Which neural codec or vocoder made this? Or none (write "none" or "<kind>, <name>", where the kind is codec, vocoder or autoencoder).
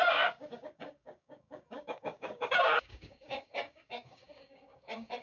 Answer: codec, DAC